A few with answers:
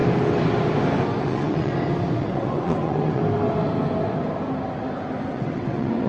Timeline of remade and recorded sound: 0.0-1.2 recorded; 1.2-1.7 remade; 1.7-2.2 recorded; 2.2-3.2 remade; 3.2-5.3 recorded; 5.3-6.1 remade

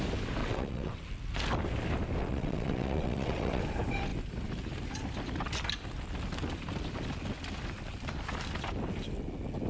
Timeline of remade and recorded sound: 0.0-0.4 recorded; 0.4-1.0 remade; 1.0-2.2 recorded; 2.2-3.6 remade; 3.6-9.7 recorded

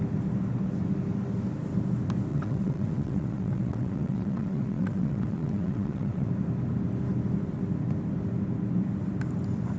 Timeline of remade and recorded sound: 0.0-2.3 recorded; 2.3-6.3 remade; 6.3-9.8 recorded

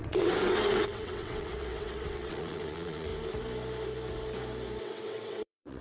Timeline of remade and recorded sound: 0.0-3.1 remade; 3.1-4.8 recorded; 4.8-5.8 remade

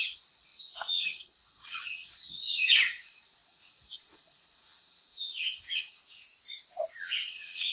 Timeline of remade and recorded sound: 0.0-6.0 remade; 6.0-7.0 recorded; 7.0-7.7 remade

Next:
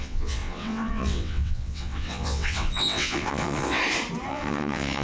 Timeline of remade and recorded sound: 0.0-3.8 remade; 3.8-4.3 recorded; 4.3-5.0 remade

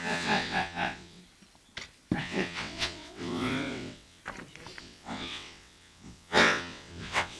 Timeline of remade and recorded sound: 0.0-1.2 remade; 1.2-2.2 recorded; 2.2-4.2 remade; 4.2-4.8 recorded; 4.8-7.4 remade